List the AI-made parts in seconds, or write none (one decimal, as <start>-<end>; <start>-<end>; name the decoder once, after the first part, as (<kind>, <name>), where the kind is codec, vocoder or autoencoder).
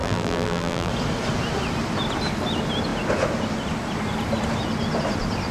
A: 0.0-0.9 (vocoder, BigVGAN v2)